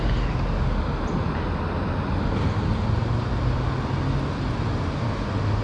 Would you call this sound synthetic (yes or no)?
no